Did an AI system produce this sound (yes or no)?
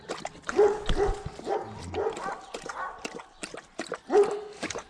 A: no